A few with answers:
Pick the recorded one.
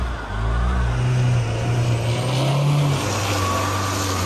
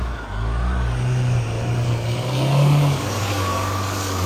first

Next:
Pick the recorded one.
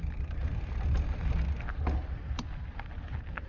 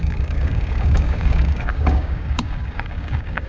first